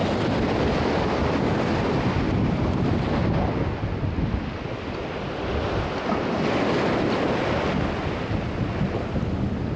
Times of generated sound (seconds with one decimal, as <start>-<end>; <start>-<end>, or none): none